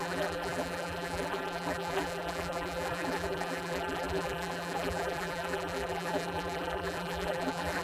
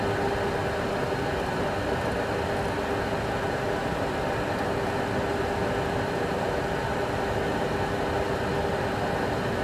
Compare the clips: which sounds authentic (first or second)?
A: second